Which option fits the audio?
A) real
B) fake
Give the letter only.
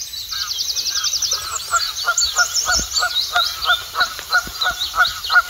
A